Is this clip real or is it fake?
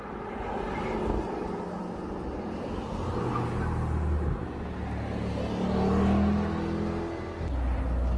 real